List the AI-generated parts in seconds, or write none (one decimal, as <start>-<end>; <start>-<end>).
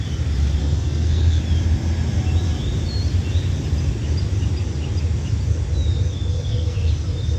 0.6-1.4; 6.3-6.9